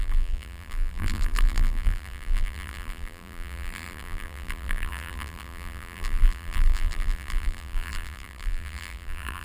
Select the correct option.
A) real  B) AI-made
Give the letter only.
B